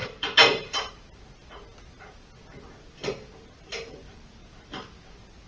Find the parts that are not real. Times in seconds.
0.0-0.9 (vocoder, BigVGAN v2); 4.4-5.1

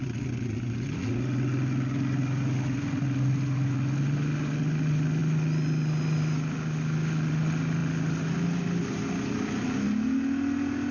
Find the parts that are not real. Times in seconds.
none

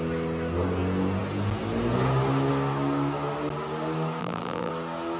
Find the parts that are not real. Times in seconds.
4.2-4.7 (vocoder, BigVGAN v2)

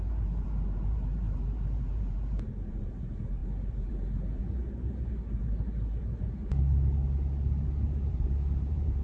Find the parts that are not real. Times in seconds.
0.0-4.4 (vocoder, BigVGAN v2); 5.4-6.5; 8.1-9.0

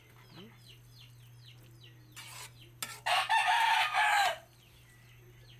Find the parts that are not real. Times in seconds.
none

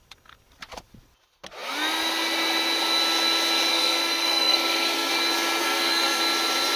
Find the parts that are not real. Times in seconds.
3.7-5.1 (codec, SNAC); 5.6-6.2